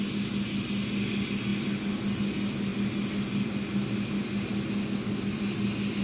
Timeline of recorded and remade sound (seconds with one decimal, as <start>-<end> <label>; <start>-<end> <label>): 0.0-6.0 recorded